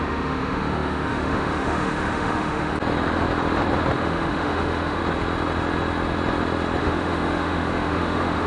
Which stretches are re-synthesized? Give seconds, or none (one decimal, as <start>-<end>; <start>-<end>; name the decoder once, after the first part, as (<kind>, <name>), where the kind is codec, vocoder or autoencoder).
0.0-2.7 (autoencoder, DAC-VAE); 4.0-5.0; 6.8-8.5